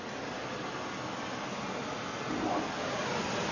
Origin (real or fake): real